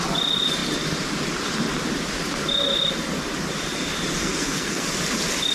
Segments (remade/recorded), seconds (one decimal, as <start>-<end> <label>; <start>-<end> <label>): 0.0-4.2 recorded; 4.2-4.9 remade; 4.9-5.5 recorded